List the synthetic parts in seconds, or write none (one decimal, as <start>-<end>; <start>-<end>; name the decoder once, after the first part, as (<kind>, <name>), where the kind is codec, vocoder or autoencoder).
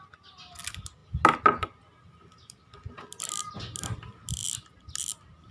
none